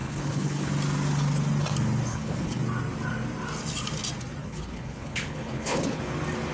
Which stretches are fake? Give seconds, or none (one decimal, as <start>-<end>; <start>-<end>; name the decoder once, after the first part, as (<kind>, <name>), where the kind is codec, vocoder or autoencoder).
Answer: 0.0-0.7 (codec, HILCodec); 2.1-2.6; 4.4-6.0